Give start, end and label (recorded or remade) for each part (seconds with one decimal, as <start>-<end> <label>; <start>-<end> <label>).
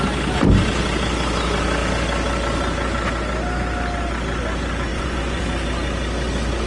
0.0-4.9 recorded; 4.9-5.4 remade; 5.4-6.7 recorded